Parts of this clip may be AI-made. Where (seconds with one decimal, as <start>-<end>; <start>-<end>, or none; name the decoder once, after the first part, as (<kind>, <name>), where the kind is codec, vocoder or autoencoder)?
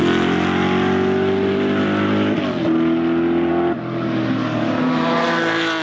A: none